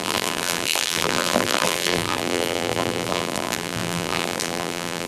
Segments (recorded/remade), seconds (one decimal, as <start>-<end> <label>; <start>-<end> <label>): 0.0-5.1 remade